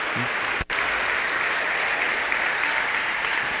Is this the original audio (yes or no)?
yes